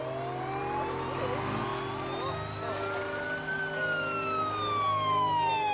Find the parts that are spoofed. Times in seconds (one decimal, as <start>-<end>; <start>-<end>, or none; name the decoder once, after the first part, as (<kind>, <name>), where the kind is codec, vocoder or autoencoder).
none